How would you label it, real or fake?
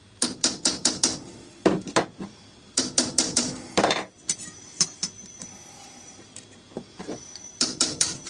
fake